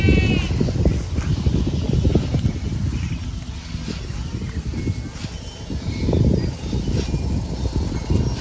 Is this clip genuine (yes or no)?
yes